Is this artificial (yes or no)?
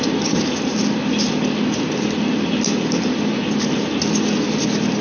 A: no